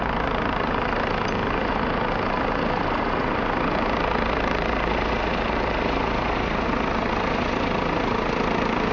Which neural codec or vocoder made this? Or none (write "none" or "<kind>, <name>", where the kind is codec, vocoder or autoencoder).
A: none